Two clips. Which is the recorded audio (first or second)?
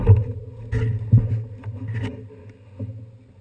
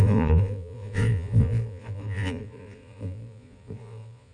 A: first